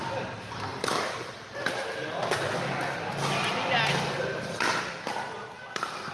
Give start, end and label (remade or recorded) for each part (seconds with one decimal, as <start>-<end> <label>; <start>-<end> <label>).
0.0-6.1 recorded